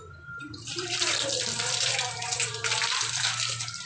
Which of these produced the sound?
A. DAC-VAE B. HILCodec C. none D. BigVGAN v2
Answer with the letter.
D